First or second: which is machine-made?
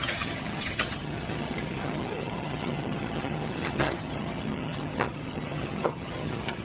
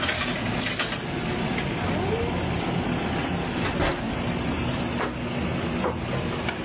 first